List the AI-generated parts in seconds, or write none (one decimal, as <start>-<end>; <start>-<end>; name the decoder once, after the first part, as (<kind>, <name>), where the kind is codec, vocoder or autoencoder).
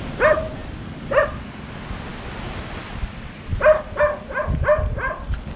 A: 3.5-4.0 (vocoder, BigVGAN v2)